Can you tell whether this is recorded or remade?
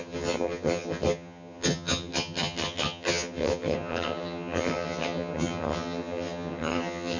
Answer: remade